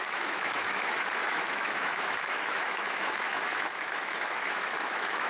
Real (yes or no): no